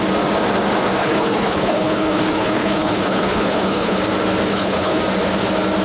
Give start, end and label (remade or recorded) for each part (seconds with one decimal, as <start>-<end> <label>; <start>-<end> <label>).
0.0-1.0 recorded; 1.0-4.0 remade; 4.0-4.5 recorded; 4.5-5.0 remade; 5.0-5.8 recorded